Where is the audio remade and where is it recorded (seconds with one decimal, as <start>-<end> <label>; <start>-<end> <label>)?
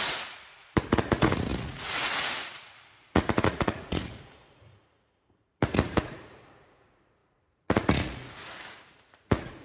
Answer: 0.0-9.6 remade